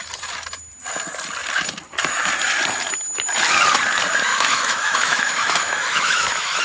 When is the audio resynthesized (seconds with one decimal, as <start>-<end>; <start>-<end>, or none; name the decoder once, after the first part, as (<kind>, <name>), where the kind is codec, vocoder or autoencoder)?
4.3-6.6 (autoencoder, DAC-VAE)